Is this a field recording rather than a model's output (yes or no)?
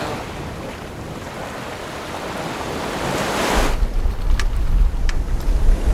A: yes